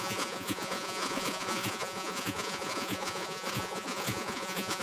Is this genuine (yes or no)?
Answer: no